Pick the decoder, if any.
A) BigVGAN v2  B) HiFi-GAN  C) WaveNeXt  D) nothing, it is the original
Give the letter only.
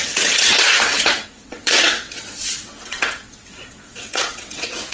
C